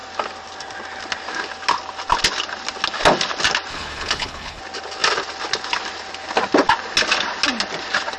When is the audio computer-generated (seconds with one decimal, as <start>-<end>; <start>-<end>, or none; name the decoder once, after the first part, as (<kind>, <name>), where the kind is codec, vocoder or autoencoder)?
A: 3.7-4.6 (codec, HILCodec)